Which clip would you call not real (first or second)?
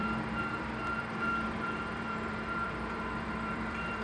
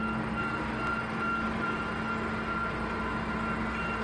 first